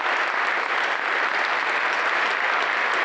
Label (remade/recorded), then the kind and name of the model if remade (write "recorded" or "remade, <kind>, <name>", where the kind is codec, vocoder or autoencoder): recorded